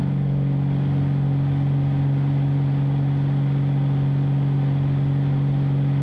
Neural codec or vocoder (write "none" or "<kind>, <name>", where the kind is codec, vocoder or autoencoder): none